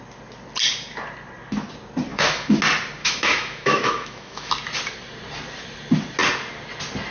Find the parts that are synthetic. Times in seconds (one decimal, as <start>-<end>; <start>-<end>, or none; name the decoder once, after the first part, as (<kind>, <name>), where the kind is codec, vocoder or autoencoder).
2.1-2.6 (autoencoder, DAC-VAE); 3.0-4.5